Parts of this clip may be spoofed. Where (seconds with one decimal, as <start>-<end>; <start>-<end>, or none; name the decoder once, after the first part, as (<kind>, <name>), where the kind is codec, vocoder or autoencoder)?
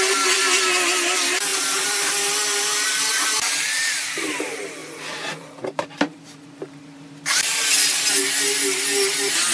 1.5-2.1 (vocoder, BigVGAN v2); 4.8-7.2